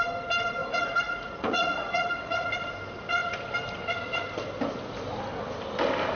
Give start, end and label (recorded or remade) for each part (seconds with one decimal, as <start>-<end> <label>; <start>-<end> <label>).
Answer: 0.0-0.6 recorded; 0.6-2.5 remade; 2.5-6.2 recorded